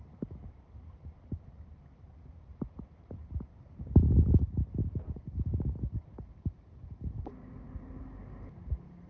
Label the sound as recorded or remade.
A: recorded